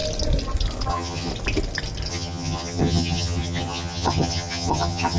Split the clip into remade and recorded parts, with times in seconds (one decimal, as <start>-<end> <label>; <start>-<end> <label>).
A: 0.0-0.9 recorded; 0.9-1.3 remade; 1.3-2.1 recorded; 2.1-5.2 remade